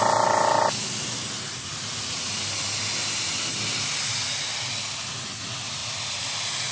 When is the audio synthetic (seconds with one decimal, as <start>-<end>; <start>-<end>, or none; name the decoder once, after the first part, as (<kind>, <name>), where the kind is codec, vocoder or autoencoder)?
none